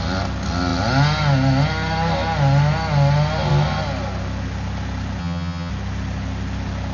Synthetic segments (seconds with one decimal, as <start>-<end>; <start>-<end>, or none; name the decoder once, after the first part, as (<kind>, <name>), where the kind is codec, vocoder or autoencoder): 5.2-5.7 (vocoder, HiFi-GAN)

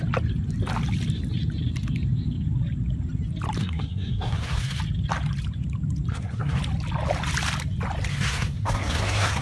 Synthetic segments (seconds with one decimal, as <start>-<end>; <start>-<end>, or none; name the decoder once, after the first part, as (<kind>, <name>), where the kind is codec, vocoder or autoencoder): 3.6-4.8 (codec, SNAC); 6.1-6.6; 8.1-9.4

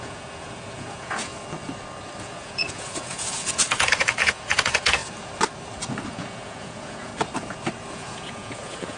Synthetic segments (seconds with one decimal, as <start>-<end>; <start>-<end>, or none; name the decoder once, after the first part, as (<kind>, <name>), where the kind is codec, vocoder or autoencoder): 0.0-1.3 (vocoder, Vocos); 2.2-5.0; 6.1-7.1; 7.9-9.0